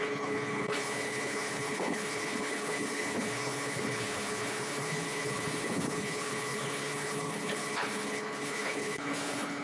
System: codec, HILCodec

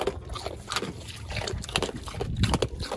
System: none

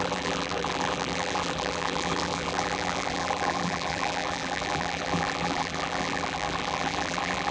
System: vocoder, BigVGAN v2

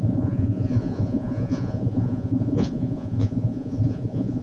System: vocoder, Vocos